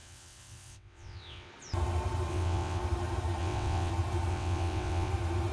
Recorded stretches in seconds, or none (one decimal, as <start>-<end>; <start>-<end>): 1.5-2.3; 2.8-3.4; 3.9-4.3; 5.1-5.5